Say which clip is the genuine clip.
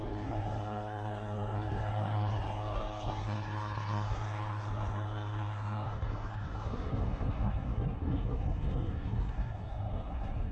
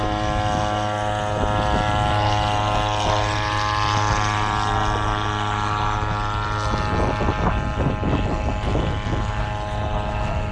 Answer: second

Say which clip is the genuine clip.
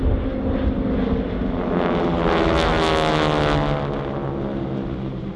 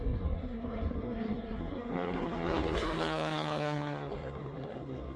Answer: first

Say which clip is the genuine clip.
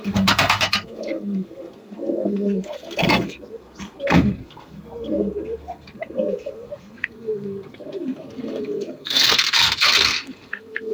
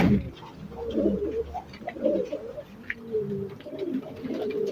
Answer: second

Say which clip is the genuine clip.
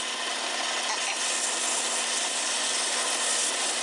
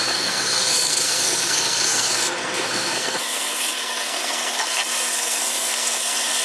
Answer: first